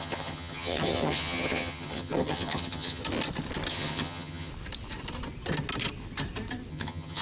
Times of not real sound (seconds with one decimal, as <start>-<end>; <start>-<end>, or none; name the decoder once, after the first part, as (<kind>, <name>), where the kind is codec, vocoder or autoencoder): 0.0-3.0 (vocoder, HiFi-GAN); 3.7-4.5; 6.7-7.2